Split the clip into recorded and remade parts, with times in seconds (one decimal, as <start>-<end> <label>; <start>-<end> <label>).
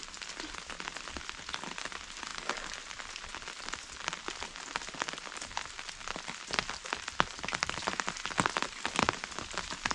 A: 0.0-9.9 recorded